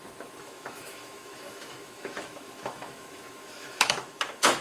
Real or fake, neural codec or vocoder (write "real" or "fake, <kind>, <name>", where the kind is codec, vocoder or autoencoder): fake, autoencoder, DAC-VAE